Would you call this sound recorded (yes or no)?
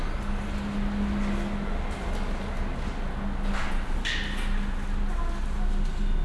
yes